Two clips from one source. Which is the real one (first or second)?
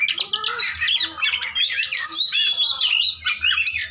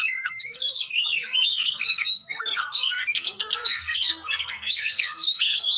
first